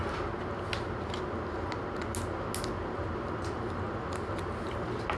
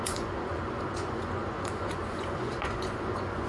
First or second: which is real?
first